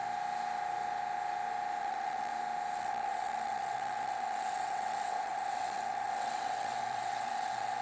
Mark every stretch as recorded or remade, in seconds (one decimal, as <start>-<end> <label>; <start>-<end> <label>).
0.0-1.8 recorded; 1.8-2.3 remade; 2.3-2.8 recorded; 2.8-7.8 remade